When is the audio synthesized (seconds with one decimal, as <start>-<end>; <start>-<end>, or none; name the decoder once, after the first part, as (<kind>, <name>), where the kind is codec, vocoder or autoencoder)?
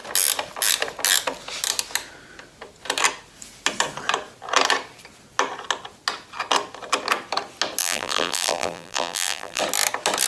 7.8-9.6 (vocoder, BigVGAN v2)